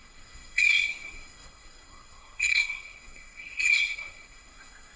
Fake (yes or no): yes